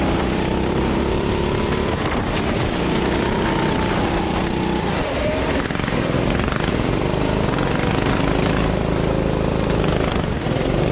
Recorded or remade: remade